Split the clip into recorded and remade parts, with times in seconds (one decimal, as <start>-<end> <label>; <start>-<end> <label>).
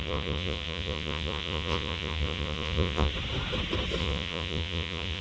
0.0-3.1 remade; 3.1-4.0 recorded; 4.0-5.2 remade